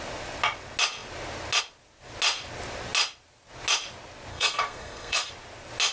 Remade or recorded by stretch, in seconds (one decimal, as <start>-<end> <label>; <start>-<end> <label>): 0.0-4.3 recorded; 4.3-5.3 remade; 5.3-5.9 recorded

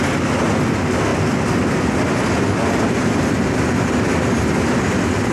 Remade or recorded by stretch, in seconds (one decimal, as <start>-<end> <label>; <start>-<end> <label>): 0.0-5.3 recorded

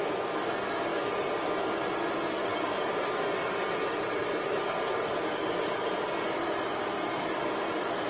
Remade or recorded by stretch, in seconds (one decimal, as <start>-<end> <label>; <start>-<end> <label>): 0.0-8.1 recorded

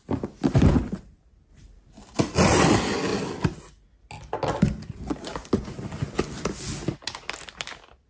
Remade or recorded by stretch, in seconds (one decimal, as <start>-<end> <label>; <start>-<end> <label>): 0.0-1.5 recorded; 1.5-2.2 remade; 2.2-8.1 recorded

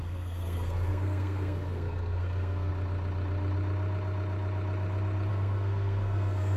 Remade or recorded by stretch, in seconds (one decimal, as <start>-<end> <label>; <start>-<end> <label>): 0.0-2.7 remade; 2.7-5.3 recorded; 5.3-6.6 remade

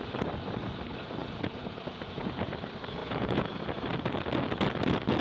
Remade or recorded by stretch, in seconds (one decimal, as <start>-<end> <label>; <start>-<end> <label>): 0.0-1.2 recorded; 1.2-2.5 remade; 2.5-3.0 recorded; 3.0-3.6 remade; 3.6-5.2 recorded

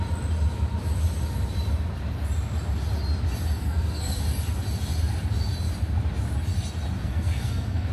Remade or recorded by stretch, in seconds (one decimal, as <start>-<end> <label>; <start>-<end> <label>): 0.0-3.6 recorded; 3.6-4.2 remade; 4.2-7.0 recorded; 7.0-7.9 remade

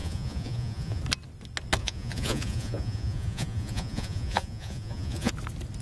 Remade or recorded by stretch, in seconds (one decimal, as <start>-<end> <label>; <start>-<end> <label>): 0.0-1.0 remade; 1.0-1.8 recorded; 1.8-5.3 remade; 5.3-5.8 recorded